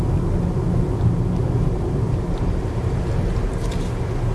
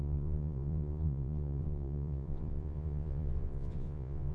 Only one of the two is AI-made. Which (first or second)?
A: second